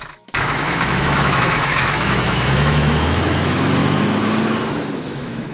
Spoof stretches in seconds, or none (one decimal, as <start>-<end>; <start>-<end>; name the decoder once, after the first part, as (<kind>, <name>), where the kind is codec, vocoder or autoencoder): 0.0-3.8 (autoencoder, DAC-VAE); 4.9-5.5